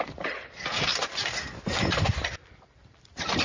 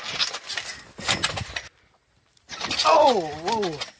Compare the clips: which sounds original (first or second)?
second